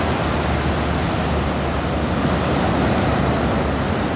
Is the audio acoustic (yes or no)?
yes